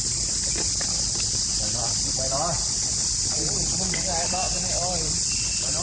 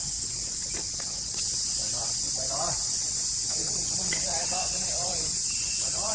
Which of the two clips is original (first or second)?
first